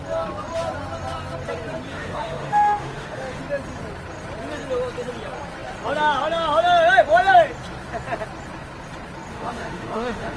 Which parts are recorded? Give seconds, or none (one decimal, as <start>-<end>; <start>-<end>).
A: 0.0-1.9; 3.4-9.3